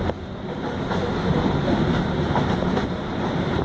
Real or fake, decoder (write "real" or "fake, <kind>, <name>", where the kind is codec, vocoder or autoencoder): fake, vocoder, BigVGAN v2